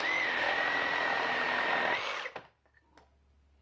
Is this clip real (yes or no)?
yes